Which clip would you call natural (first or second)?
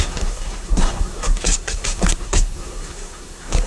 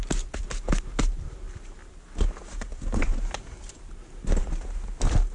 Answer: second